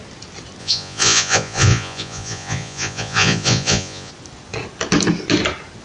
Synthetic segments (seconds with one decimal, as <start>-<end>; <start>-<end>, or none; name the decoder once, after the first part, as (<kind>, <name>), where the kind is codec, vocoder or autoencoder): 0.6-4.1 (vocoder, Vocos)